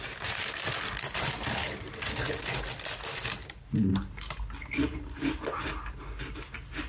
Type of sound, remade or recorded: recorded